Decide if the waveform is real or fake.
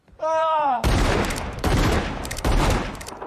fake